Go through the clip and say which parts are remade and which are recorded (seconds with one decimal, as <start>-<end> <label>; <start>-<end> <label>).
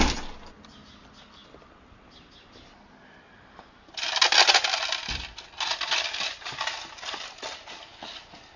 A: 0.0-8.6 recorded